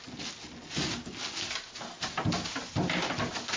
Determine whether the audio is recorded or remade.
recorded